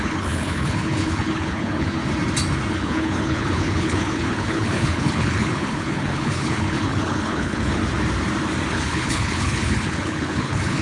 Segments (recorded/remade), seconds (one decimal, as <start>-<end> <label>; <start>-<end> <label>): 0.0-2.0 remade; 2.0-2.7 recorded; 2.7-7.8 remade; 7.8-8.7 recorded; 8.7-10.8 remade